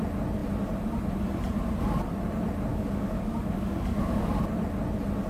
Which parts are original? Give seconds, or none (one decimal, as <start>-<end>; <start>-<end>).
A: 0.0-2.7; 4.4-5.3